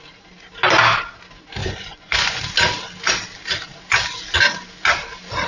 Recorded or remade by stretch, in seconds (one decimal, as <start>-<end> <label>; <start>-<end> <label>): 0.0-1.6 recorded; 1.6-2.4 remade; 2.4-5.5 recorded